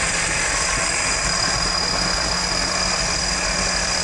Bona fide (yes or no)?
yes